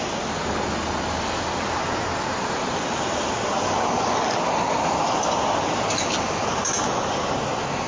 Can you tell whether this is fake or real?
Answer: real